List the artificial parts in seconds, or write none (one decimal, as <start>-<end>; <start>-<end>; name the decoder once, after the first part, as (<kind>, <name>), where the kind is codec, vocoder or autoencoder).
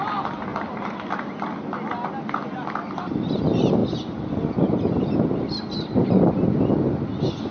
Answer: none